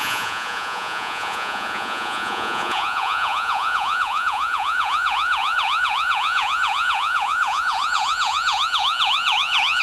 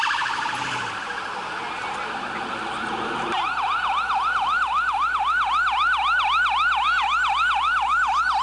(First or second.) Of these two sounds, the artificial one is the first